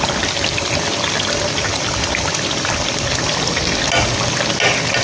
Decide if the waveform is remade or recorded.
recorded